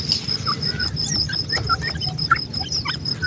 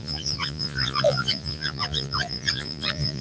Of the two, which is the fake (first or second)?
second